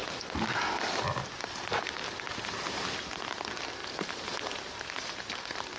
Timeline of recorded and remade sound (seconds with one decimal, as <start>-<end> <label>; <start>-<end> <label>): 0.0-5.8 recorded